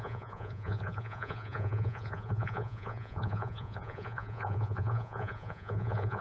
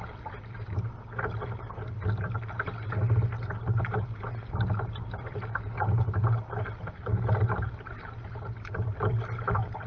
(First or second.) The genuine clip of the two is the second